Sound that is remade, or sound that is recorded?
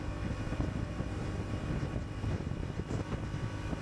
recorded